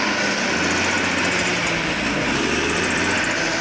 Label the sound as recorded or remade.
recorded